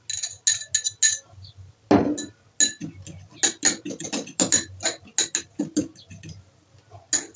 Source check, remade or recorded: recorded